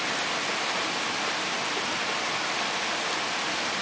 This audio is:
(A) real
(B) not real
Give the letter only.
A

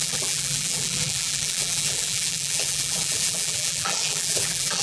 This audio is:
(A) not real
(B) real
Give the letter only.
A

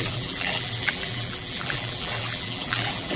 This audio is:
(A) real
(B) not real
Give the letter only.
B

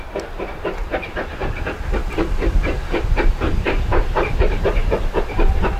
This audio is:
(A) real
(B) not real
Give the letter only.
A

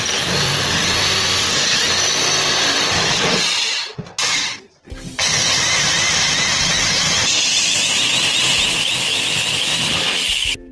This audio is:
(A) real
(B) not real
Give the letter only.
A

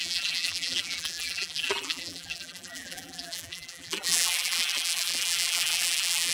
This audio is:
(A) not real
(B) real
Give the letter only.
A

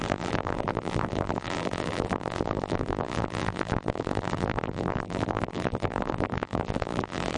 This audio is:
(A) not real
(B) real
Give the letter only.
A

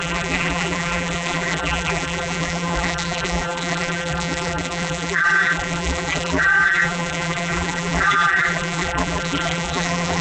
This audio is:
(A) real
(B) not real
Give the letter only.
B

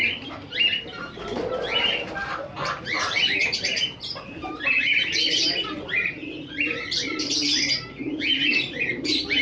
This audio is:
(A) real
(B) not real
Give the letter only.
B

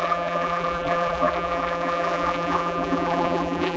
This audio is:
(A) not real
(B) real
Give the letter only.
A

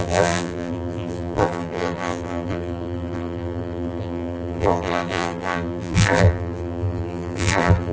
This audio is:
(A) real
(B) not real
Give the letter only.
B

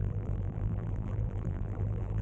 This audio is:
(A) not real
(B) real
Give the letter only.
A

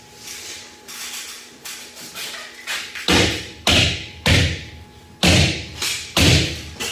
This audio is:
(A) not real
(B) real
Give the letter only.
B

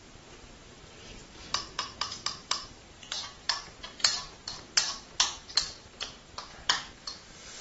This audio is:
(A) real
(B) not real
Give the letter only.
B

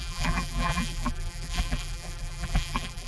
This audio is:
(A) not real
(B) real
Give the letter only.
A